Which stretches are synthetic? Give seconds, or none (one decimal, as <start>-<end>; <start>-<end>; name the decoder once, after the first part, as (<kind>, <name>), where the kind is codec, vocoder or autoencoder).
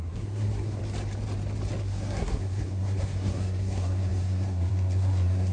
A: 0.0-0.8 (codec, SNAC); 1.8-5.5